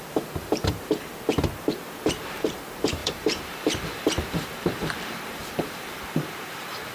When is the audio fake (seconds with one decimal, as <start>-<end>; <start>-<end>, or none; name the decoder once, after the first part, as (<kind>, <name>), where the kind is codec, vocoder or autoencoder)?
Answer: 0.0-1.1 (vocoder, BigVGAN v2); 2.2-6.9